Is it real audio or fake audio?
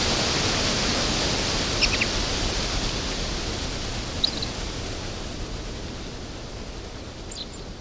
real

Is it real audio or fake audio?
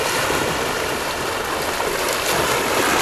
real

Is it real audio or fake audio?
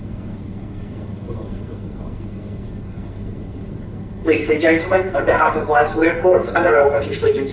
fake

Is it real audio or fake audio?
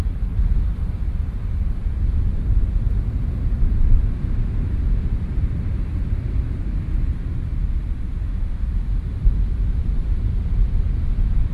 real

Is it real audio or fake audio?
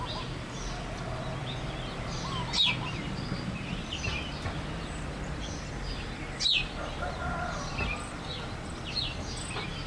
real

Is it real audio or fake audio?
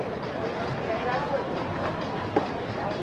real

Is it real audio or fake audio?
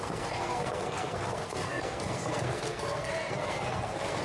fake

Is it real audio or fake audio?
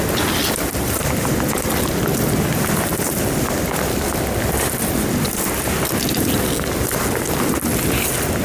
real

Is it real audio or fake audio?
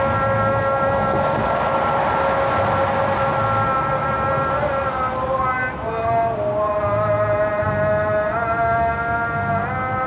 real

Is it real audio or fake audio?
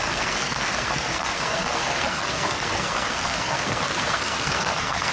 fake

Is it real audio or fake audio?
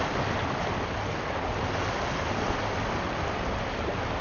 real